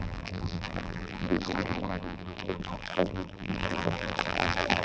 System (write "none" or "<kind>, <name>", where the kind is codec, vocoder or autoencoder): vocoder, BigVGAN v2